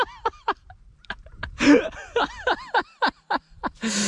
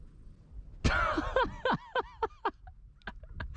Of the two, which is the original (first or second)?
second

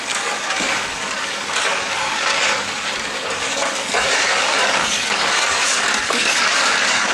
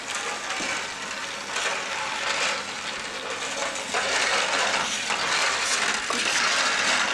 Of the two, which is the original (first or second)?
second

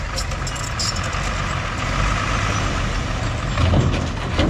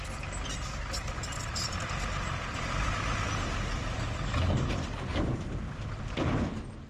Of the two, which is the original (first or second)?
first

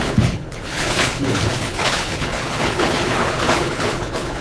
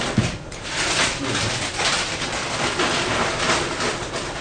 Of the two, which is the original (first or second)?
second